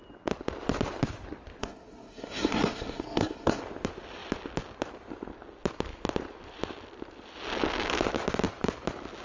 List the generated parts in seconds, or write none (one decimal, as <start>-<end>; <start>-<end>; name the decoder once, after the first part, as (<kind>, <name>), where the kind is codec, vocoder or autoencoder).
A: 1.6-3.6 (codec, SNAC)